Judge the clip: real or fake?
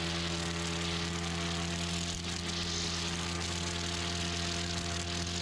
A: real